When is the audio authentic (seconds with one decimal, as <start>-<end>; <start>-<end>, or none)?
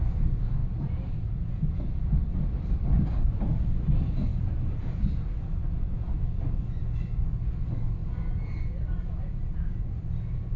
0.0-0.6; 2.1-4.3; 6.4-8.0; 10.0-10.6